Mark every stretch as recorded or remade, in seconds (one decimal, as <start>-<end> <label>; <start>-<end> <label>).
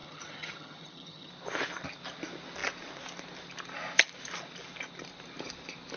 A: 0.0-1.3 remade; 1.3-6.0 recorded